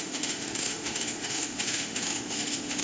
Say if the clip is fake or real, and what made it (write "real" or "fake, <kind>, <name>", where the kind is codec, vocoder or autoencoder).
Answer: fake, autoencoder, DAC-VAE